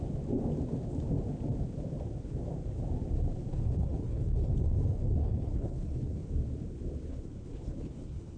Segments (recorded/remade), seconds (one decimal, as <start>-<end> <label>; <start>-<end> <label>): 0.0-3.5 recorded; 3.5-6.3 remade; 6.3-7.1 recorded; 7.1-8.4 remade